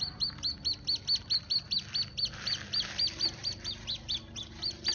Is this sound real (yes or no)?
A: yes